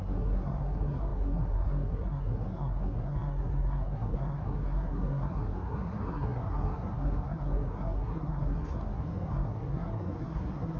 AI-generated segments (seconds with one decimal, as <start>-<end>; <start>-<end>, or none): 0.0-10.8